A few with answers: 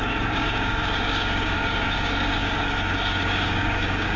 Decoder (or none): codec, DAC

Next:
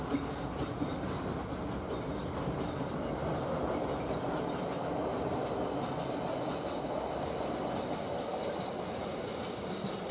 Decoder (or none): none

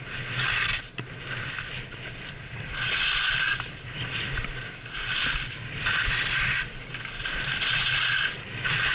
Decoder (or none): none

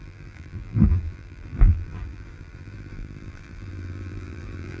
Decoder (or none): vocoder, BigVGAN v2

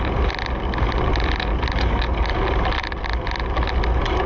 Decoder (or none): none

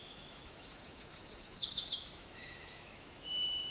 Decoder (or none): autoencoder, DAC-VAE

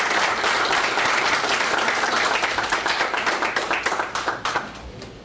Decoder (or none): none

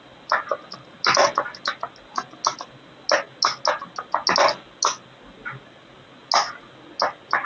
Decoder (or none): none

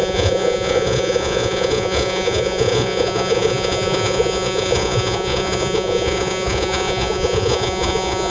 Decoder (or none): vocoder, Vocos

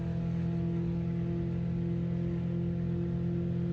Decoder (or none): none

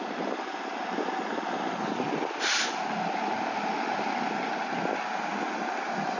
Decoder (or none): none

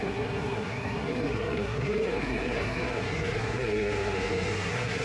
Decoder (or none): codec, SNAC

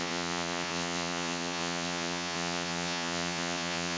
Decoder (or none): vocoder, Vocos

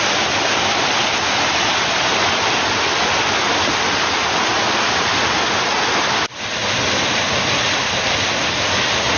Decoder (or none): none